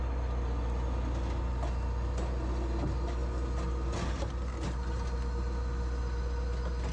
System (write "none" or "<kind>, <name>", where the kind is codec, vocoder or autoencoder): none